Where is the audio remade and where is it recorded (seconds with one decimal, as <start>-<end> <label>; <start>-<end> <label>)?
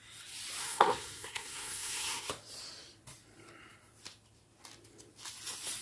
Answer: 0.0-0.6 recorded; 0.6-2.3 remade; 2.3-5.8 recorded